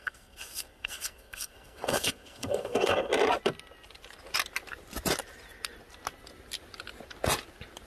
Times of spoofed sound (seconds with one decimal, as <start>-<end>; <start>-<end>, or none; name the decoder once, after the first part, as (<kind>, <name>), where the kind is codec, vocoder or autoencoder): 0.0-3.1 (codec, SNAC)